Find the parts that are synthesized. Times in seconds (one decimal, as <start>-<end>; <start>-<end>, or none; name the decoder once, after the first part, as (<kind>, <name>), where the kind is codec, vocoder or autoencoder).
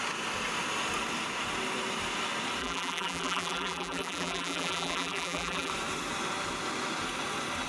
2.6-5.7 (vocoder, BigVGAN v2)